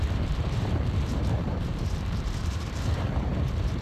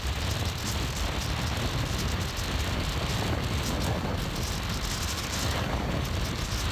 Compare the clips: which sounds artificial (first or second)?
first